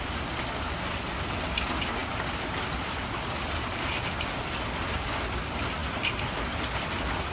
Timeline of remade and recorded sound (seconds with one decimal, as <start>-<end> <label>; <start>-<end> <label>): 0.0-7.3 recorded